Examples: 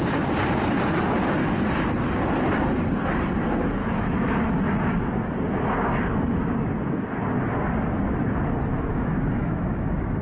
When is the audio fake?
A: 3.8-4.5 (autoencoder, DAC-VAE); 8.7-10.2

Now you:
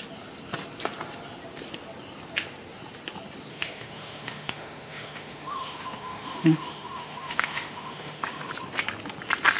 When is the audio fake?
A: 3.5-8.5 (autoencoder, DAC-VAE)

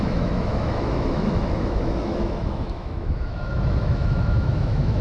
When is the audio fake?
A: 0.0-5.0 (autoencoder, DAC-VAE)

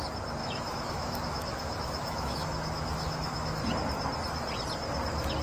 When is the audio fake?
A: 0.4-3.6 (autoencoder, DAC-VAE)

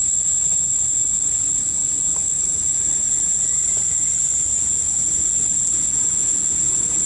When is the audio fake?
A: none

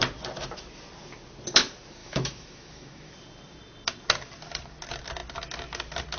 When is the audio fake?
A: 2.0-3.1 (autoencoder, DAC-VAE)

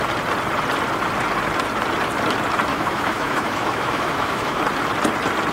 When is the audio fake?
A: 2.7-4.6 (autoencoder, DAC-VAE)

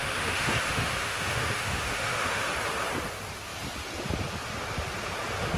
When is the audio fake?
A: 0.0-2.5 (autoencoder, DAC-VAE)